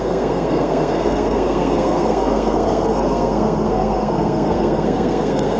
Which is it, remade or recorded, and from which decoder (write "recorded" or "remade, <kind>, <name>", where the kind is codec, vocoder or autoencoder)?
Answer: remade, codec, SNAC